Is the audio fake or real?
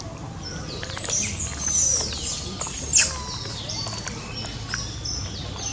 real